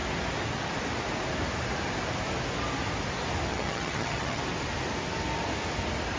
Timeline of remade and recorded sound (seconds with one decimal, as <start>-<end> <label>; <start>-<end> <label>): 0.0-3.5 recorded; 3.5-4.4 remade; 4.4-6.2 recorded